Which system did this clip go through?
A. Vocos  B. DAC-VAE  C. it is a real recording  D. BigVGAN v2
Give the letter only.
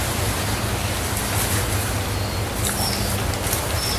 C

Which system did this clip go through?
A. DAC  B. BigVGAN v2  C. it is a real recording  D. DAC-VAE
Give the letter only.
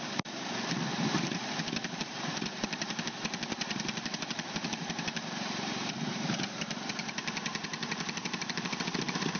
B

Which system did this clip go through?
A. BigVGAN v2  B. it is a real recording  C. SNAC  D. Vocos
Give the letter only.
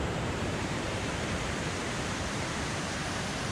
A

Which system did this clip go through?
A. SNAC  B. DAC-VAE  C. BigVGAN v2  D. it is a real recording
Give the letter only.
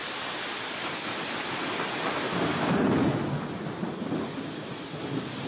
D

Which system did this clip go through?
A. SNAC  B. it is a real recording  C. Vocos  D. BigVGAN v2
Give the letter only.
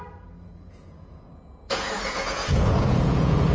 C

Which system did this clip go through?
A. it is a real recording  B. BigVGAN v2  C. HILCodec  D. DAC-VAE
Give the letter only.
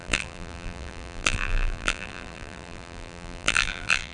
B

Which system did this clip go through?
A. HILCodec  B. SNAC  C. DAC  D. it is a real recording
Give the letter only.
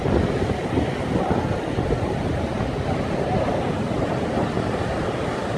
D